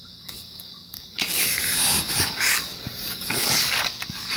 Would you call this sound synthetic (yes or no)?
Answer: yes